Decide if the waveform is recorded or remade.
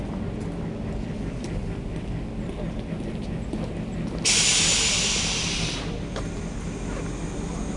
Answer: recorded